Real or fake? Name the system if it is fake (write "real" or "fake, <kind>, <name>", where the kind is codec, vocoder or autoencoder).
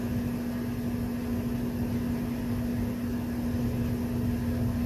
real